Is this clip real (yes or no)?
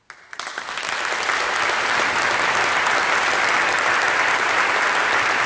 yes